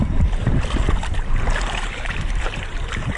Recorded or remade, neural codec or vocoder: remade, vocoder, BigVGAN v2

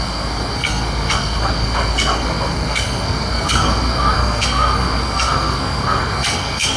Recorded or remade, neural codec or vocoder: remade, codec, SNAC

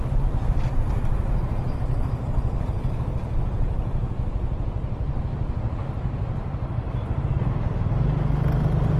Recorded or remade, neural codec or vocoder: recorded